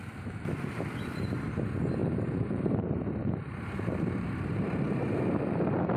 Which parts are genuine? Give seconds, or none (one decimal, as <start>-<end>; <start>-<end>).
0.0-2.0; 5.0-6.0